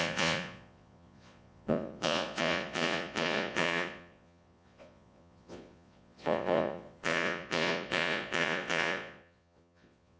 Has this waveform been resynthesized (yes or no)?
yes